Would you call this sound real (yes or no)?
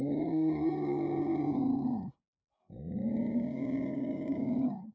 no